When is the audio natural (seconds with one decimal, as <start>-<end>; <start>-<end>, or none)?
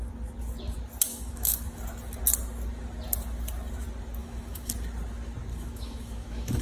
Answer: 0.0-1.1; 1.8-4.2; 4.7-5.5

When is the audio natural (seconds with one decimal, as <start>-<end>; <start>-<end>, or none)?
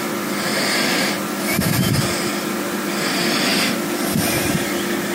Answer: 0.0-5.1